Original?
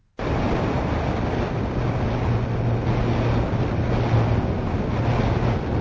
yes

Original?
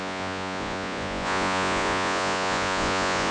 no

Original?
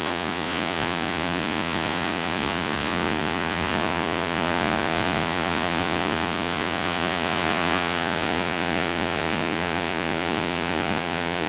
no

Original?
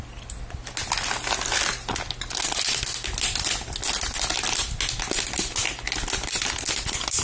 yes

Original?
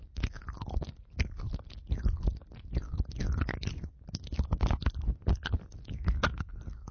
yes